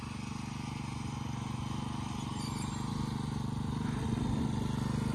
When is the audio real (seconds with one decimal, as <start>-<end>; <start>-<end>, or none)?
0.0-2.3; 2.9-5.1